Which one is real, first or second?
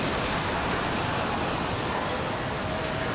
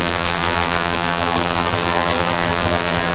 first